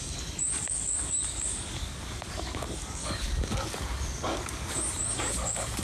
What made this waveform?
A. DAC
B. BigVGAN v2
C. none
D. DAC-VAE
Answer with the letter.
A